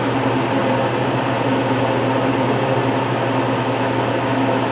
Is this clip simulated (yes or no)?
no